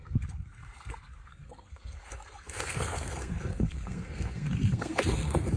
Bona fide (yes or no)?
no